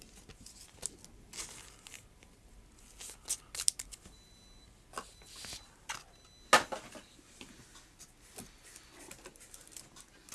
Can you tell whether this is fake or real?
real